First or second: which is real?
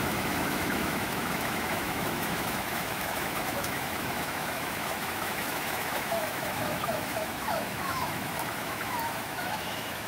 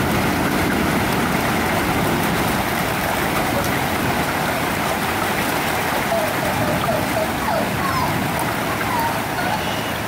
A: second